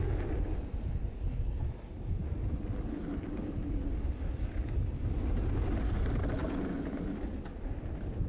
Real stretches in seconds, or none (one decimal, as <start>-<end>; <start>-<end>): 0.0-8.3